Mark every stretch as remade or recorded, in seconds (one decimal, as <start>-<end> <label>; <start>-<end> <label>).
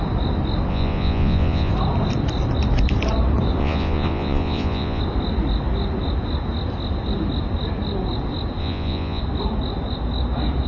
0.0-0.7 recorded; 0.7-1.7 remade; 1.7-3.6 recorded; 3.6-5.0 remade; 5.0-8.6 recorded; 8.6-9.2 remade; 9.2-10.7 recorded